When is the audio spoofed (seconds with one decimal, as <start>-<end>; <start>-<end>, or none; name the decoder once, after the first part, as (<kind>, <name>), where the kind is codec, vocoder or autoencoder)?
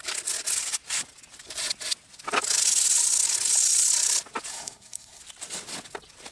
4.5-5.2 (codec, SNAC)